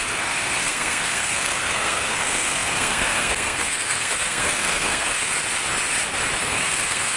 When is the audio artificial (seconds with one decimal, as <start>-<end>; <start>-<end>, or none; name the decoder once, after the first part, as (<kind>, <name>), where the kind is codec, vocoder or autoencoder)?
0.0-5.3 (codec, SNAC); 6.4-7.2